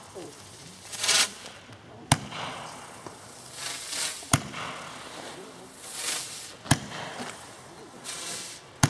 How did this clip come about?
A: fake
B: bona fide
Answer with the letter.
B